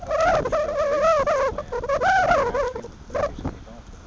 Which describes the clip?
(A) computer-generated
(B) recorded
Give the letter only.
B